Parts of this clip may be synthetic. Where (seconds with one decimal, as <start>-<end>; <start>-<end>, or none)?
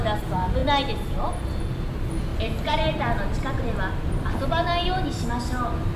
2.3-3.6